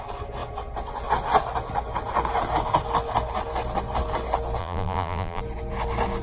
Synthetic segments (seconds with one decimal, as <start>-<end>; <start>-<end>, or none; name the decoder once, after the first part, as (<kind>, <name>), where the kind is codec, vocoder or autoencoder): 4.6-5.4 (vocoder, BigVGAN v2)